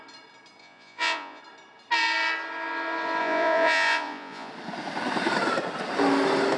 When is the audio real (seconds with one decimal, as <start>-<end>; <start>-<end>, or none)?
0.0-0.6; 1.4-3.2; 4.5-6.6